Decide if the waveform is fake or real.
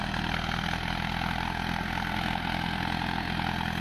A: real